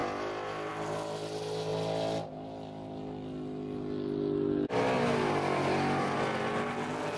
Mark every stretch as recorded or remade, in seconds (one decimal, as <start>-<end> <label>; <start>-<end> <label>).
0.0-7.2 recorded